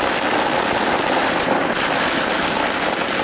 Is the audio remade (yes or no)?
no